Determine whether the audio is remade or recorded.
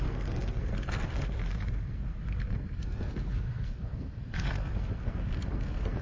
remade